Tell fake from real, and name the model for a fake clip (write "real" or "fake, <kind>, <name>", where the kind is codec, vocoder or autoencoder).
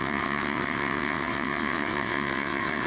fake, vocoder, WaveNeXt